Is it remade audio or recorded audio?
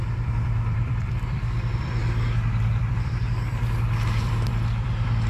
remade